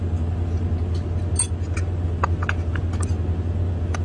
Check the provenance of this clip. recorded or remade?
recorded